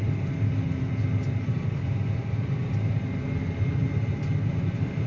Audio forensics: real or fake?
real